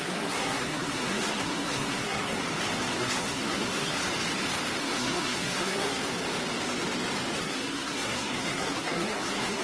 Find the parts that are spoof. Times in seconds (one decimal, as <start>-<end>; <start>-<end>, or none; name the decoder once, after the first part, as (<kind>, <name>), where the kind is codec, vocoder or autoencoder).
0.0-2.4 (codec, SNAC); 3.0-4.0; 4.8-6.0; 7.4-9.6